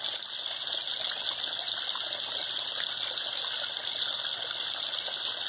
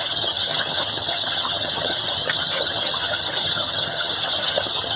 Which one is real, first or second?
first